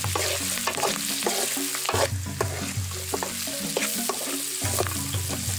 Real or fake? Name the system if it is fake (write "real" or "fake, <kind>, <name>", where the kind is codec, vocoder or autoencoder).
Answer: real